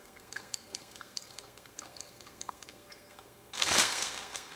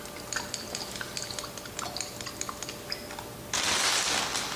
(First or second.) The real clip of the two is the second